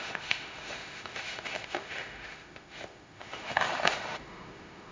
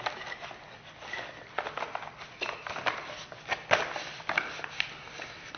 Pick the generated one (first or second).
first